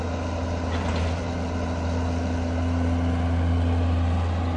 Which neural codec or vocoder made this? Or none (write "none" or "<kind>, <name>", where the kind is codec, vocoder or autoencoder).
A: none